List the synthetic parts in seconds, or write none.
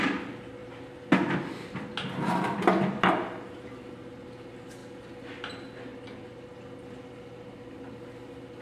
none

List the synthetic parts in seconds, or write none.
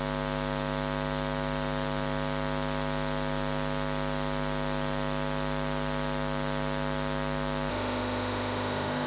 7.7-9.1 (autoencoder, DAC-VAE)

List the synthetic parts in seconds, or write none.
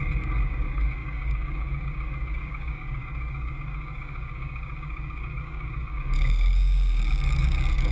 0.0-7.9 (codec, DAC)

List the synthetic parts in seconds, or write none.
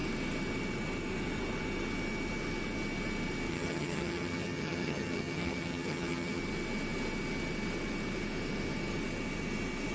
3.5-6.4 (vocoder, HiFi-GAN)